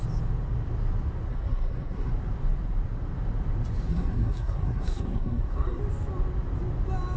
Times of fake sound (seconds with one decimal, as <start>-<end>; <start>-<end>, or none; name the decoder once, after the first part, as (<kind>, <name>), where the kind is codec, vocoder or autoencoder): 1.3-2.1 (codec, SNAC); 3.9-5.8